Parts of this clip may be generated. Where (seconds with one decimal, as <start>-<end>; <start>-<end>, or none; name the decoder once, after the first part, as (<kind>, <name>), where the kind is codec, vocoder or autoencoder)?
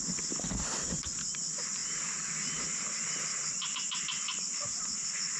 none